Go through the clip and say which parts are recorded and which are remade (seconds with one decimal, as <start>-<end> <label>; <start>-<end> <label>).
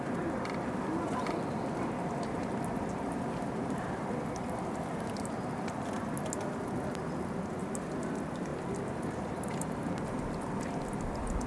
0.0-8.5 recorded; 8.5-10.0 remade; 10.0-11.5 recorded